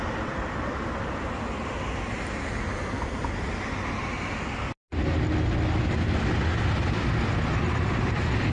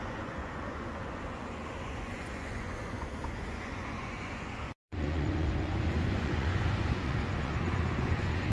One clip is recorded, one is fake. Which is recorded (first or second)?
first